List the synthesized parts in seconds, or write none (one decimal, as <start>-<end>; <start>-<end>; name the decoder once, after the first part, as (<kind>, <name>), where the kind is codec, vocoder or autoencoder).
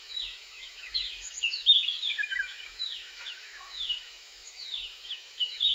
0.0-5.7 (autoencoder, DAC-VAE)